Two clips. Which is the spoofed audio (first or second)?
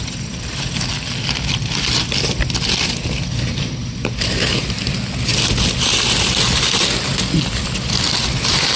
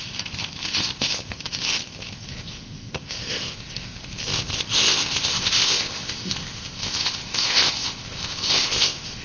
second